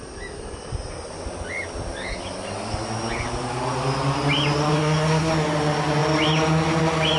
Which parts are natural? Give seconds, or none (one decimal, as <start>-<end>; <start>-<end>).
0.0-4.7; 5.3-7.2